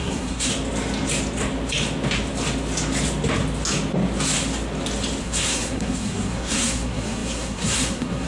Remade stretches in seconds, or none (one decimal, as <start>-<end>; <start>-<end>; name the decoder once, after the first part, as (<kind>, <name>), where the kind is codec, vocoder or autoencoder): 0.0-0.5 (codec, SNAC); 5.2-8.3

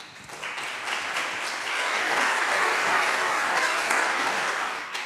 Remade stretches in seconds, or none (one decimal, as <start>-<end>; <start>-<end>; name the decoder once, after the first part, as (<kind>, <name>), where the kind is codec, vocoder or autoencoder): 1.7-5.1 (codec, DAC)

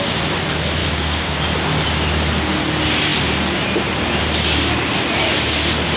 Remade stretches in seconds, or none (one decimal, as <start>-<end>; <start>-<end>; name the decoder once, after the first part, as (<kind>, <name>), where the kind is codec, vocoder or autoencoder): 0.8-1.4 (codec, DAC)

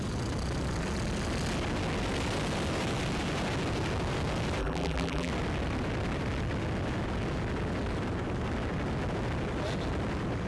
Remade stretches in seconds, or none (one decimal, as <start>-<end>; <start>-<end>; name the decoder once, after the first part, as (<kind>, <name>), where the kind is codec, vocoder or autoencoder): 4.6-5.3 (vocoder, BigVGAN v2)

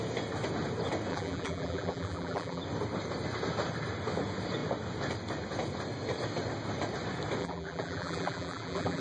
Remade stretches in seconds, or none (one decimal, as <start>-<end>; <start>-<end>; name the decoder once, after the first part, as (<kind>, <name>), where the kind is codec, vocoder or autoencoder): 1.1-2.6 (vocoder, BigVGAN v2); 7.4-9.0

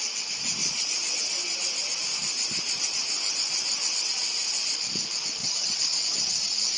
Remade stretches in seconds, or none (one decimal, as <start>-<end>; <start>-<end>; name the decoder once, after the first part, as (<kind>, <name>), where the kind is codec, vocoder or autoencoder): 0.6-1.2 (vocoder, Vocos); 5.4-6.0